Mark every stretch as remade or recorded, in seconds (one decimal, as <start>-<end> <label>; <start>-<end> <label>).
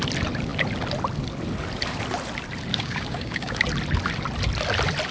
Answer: 0.0-2.7 recorded; 2.7-3.6 remade; 3.6-5.1 recorded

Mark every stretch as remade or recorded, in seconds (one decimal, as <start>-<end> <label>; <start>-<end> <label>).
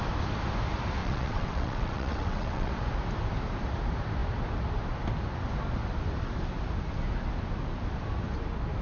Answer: 0.0-1.0 recorded; 1.0-2.7 remade; 2.7-8.8 recorded